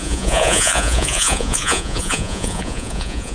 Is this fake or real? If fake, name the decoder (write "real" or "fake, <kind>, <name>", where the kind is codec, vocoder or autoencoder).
fake, vocoder, Vocos